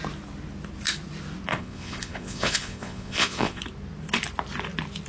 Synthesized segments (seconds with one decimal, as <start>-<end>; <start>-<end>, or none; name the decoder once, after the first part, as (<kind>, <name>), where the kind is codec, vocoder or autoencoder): 1.5-3.6 (vocoder, Vocos)